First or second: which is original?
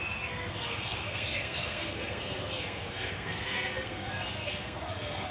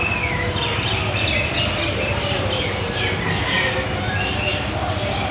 second